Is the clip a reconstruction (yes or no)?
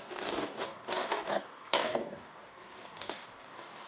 yes